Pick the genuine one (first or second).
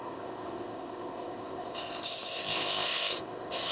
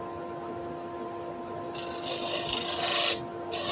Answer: second